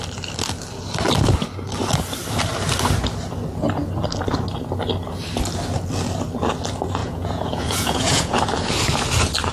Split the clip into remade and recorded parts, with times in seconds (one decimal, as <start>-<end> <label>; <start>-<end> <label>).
0.0-7.0 recorded; 7.0-8.3 remade; 8.3-9.5 recorded